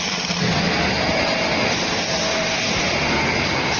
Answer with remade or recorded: recorded